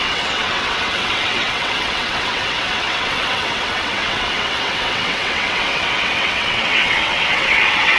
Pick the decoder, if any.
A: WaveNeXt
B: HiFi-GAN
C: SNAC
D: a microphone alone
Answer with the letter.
A